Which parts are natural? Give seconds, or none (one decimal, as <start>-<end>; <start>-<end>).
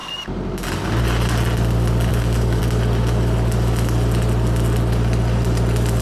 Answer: 0.0-2.1; 2.6-6.0